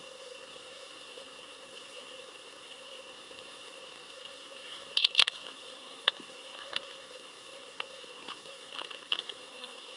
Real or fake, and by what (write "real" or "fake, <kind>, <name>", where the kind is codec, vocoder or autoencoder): fake, codec, SNAC